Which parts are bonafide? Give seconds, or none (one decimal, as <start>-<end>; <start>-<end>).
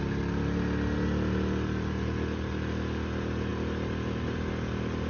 0.0-5.1